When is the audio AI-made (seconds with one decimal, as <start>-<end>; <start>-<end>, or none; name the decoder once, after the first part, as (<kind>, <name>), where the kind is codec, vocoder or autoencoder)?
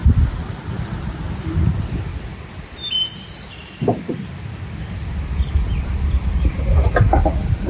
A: none